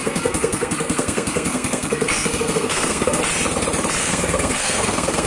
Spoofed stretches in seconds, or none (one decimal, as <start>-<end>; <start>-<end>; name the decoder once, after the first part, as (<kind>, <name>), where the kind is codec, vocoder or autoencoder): 0.0-3.2 (codec, SNAC); 4.0-5.3